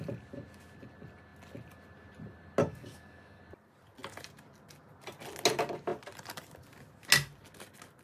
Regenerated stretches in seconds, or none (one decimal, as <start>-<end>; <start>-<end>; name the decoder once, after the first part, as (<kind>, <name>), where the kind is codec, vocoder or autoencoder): 2.6-3.4 (codec, DAC)